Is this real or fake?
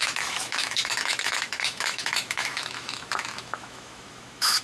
fake